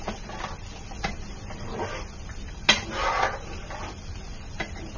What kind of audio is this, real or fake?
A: real